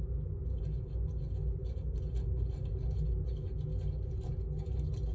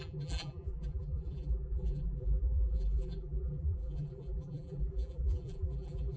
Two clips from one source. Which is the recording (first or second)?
first